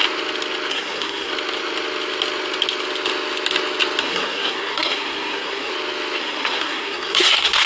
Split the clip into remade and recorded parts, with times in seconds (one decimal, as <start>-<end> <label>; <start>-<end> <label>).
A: 0.0-0.7 recorded; 0.7-1.3 remade; 1.3-4.0 recorded; 4.0-5.7 remade; 5.7-6.2 recorded; 6.2-7.7 remade